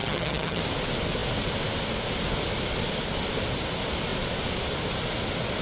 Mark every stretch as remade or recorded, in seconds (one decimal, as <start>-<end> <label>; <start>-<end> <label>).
0.0-0.6 remade; 0.6-5.6 recorded